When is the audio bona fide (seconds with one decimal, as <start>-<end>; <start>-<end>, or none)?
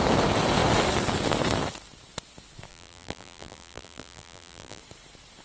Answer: 0.0-2.7; 4.8-5.4